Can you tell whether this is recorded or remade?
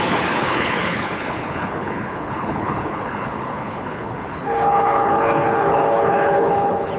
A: remade